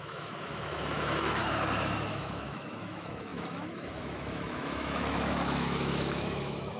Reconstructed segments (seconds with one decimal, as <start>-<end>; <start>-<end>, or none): 0.0-1.4; 2.1-6.8